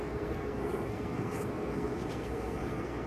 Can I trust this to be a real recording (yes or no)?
no